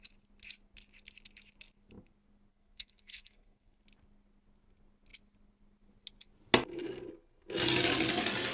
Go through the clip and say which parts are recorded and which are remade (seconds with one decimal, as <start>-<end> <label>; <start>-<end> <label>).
0.0-2.5 recorded; 2.5-3.8 remade; 3.8-8.5 recorded